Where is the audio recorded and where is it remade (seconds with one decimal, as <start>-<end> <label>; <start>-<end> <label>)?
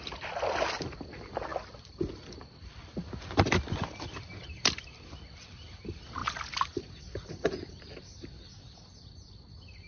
0.0-9.9 recorded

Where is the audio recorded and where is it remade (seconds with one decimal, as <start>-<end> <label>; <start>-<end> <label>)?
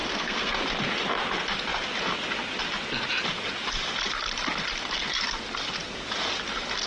0.0-0.5 remade; 0.5-6.9 recorded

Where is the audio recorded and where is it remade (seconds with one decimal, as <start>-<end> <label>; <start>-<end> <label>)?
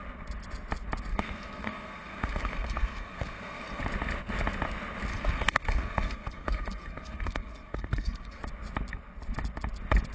0.0-1.1 recorded; 1.1-3.8 remade; 3.8-5.1 recorded; 5.1-8.4 remade; 8.4-10.1 recorded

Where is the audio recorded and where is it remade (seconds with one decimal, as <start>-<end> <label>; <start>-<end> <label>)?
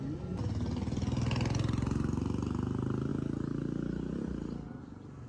0.0-5.3 recorded